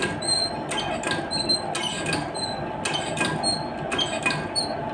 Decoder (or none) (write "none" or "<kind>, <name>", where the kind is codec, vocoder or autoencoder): none